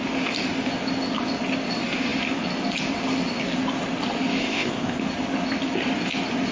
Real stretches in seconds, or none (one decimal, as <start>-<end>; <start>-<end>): 0.0-4.4; 5.0-6.5